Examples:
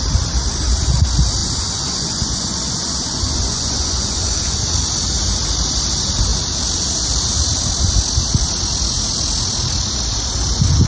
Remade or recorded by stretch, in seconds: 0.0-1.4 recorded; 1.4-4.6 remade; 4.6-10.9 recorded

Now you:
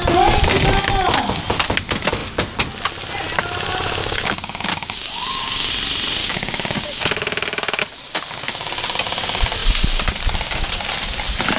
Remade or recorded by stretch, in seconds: 0.0-4.0 recorded; 4.0-5.7 remade; 5.7-6.2 recorded; 6.2-7.8 remade; 7.8-11.6 recorded

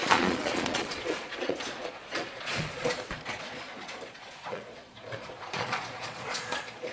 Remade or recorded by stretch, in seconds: 0.0-6.9 remade

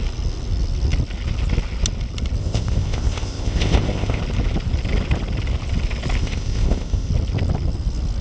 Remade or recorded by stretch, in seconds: 0.0-2.4 recorded; 2.4-4.2 remade; 4.2-6.2 recorded; 6.2-7.1 remade; 7.1-8.2 recorded

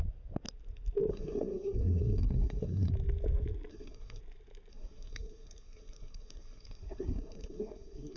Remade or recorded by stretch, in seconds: 0.0-1.1 recorded; 1.1-2.9 remade; 2.9-3.7 recorded; 3.7-4.2 remade; 4.2-4.7 recorded; 4.7-8.2 remade

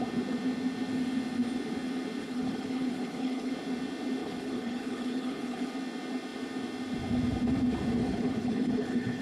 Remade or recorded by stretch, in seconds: 0.0-2.2 recorded; 2.2-3.5 remade; 3.5-4.2 recorded; 4.2-5.7 remade; 5.7-8.0 recorded; 8.0-9.2 remade

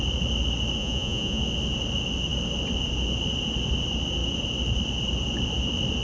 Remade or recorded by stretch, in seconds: 0.0-0.8 recorded; 0.8-1.4 remade; 1.4-6.0 recorded

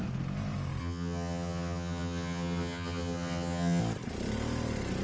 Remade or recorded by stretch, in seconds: 0.0-0.8 recorded; 0.8-3.8 remade; 3.8-5.0 recorded